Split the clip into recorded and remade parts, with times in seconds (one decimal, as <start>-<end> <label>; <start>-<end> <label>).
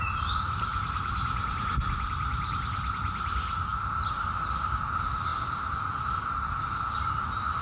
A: 0.0-0.7 recorded; 0.7-2.1 remade; 2.1-7.6 recorded